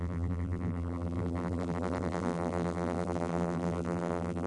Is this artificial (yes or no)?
yes